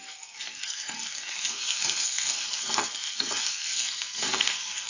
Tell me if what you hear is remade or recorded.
remade